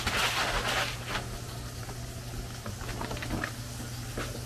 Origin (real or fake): real